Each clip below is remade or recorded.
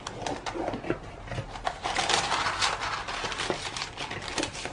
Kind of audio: recorded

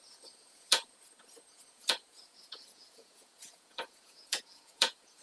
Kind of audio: remade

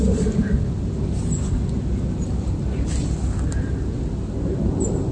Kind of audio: recorded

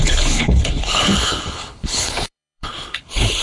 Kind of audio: remade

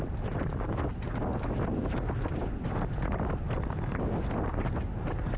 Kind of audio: recorded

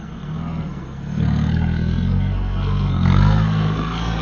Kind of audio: remade